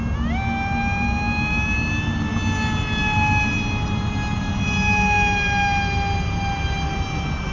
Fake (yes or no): no